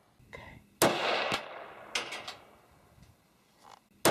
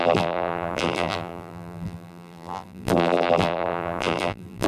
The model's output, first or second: second